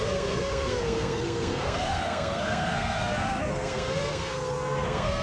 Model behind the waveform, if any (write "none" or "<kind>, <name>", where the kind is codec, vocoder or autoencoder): codec, SNAC